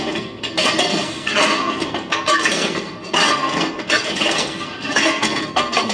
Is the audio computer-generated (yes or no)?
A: yes